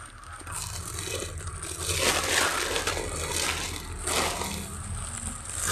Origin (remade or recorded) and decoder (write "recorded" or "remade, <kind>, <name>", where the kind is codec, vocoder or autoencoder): recorded